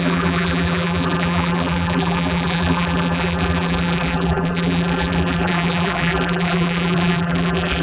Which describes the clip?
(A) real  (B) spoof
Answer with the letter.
B